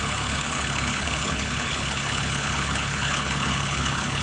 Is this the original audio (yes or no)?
no